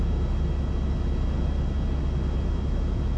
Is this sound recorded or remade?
recorded